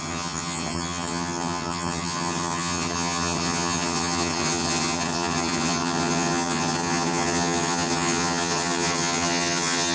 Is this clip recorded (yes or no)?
no